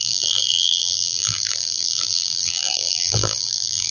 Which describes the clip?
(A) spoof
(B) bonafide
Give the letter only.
A